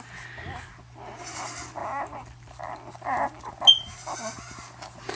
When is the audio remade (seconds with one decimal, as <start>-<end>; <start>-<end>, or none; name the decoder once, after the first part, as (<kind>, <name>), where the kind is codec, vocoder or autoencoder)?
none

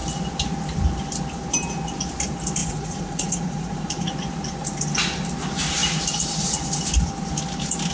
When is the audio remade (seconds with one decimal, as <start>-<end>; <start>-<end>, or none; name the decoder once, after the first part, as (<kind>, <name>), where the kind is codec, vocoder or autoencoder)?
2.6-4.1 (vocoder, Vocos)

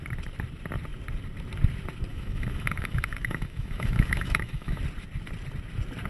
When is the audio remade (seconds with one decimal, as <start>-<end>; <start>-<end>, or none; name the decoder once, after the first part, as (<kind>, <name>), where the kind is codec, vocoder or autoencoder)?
2.1-4.8 (autoencoder, DAC-VAE)